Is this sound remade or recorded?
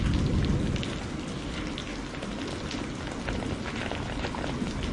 recorded